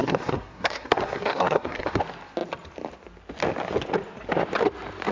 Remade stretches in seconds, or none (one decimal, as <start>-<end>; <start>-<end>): 0.0-2.0